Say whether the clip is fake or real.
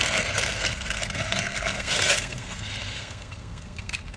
fake